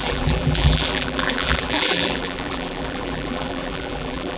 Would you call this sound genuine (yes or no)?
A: no